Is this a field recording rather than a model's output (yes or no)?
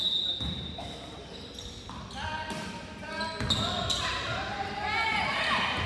yes